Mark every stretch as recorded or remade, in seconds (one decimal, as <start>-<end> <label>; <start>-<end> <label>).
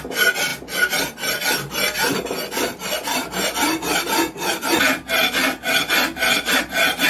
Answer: 0.0-0.5 recorded; 0.5-4.8 remade; 4.8-7.1 recorded